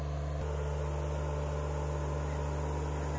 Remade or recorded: recorded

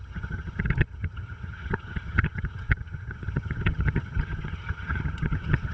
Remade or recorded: remade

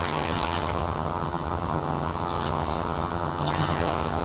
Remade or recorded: remade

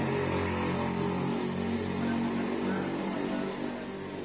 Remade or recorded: recorded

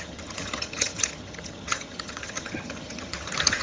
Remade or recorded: remade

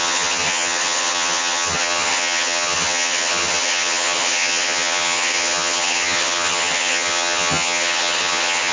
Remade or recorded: remade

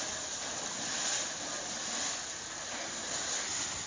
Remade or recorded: recorded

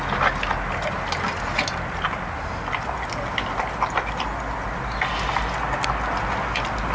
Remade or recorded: recorded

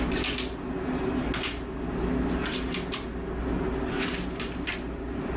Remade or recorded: recorded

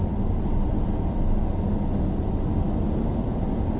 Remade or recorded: recorded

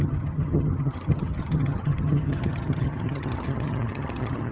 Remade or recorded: remade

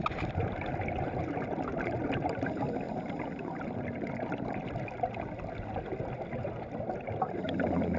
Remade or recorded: recorded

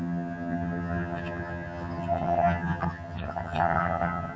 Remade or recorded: remade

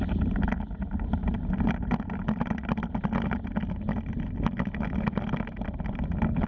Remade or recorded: recorded